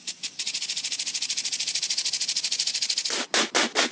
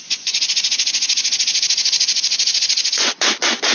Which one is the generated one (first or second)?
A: second